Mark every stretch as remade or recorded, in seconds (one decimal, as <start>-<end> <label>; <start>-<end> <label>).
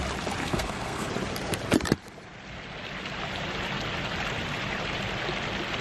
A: 0.0-0.4 recorded; 0.4-1.1 remade; 1.1-5.8 recorded